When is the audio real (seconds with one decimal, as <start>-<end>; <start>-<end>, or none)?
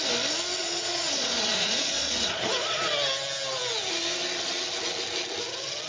0.0-0.6; 2.9-5.9